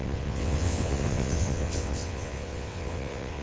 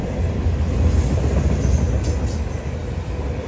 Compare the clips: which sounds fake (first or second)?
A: first